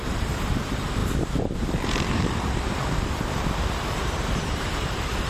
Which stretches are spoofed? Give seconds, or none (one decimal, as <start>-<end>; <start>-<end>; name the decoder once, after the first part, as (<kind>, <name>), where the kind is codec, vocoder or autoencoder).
0.0-5.3 (vocoder, BigVGAN v2)